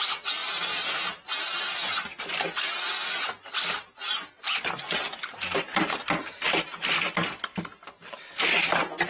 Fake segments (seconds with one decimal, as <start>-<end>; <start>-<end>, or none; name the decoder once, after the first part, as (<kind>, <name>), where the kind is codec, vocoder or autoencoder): none